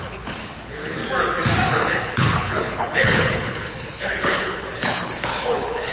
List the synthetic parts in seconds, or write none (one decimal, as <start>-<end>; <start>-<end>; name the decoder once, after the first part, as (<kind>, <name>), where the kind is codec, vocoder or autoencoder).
0.0-1.0 (codec, HILCodec); 1.7-5.9